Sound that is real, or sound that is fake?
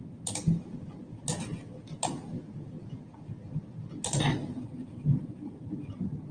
real